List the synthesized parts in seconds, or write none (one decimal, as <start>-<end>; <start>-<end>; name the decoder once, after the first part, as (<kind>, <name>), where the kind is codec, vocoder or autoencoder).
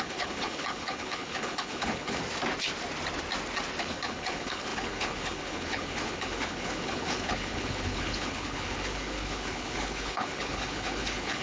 0.0-2.2 (codec, HILCodec); 3.8-11.4